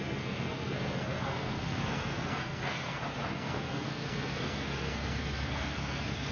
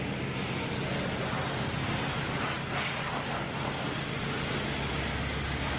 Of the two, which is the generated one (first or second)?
first